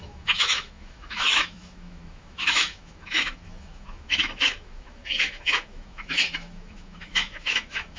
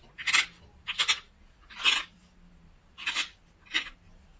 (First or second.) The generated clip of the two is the first